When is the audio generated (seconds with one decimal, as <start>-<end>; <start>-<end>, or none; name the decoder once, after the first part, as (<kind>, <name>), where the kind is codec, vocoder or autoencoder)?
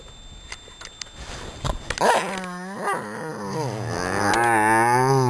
none